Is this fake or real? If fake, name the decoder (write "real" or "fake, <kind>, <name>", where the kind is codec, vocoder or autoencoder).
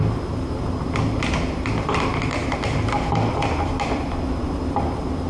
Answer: real